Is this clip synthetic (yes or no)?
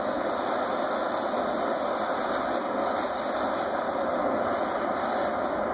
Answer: no